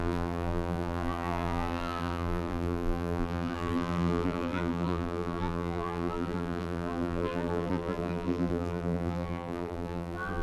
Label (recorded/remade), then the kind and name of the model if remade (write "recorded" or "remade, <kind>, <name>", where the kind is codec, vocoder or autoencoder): remade, vocoder, BigVGAN v2